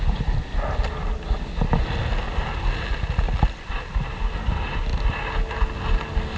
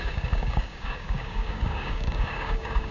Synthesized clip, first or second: second